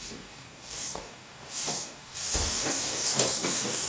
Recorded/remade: remade